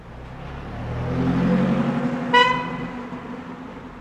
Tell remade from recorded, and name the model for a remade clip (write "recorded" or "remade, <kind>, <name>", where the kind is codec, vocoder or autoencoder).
recorded